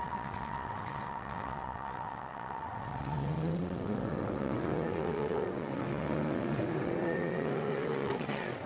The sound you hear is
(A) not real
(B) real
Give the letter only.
A